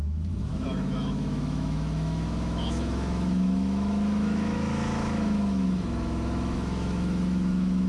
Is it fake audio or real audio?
fake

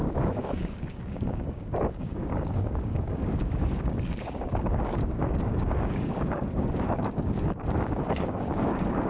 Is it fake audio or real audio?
fake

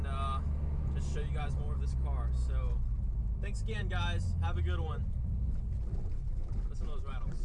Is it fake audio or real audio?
real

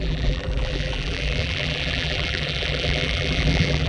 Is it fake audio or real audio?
fake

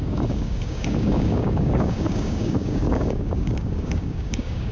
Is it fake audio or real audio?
fake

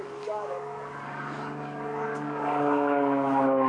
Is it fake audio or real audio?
fake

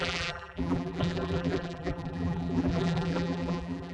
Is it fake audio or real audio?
fake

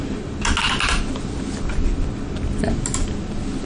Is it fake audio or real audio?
real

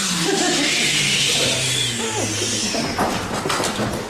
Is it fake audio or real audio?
real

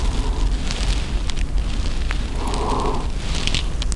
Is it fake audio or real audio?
real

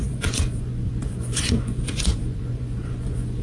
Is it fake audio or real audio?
fake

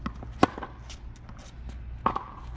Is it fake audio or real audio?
real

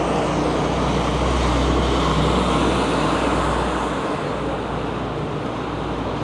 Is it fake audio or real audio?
real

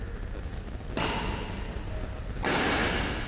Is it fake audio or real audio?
real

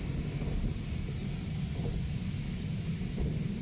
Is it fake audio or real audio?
real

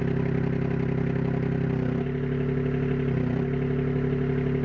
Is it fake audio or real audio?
real